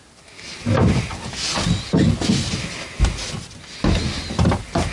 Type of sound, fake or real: real